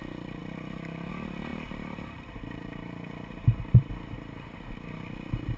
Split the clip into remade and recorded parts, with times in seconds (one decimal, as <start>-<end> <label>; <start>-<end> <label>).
0.0-1.5 recorded; 1.5-3.9 remade; 3.9-5.6 recorded